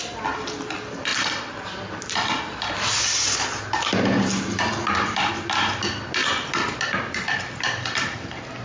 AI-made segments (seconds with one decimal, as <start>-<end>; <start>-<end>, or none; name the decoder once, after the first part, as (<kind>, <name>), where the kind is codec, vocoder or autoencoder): none